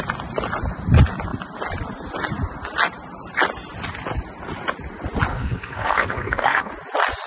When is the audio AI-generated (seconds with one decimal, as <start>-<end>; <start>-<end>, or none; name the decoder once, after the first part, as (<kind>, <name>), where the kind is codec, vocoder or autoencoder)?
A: 5.3-6.7 (codec, SNAC)